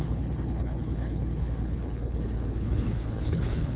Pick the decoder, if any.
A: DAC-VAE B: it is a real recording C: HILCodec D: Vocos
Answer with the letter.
C